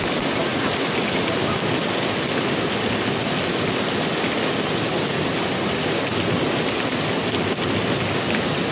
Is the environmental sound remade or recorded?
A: recorded